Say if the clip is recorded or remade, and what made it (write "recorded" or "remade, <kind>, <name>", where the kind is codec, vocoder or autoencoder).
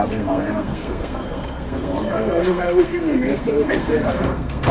remade, codec, SNAC